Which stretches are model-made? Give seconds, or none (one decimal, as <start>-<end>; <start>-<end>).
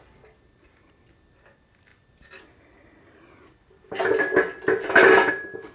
none